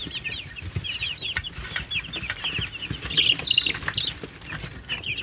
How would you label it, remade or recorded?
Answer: recorded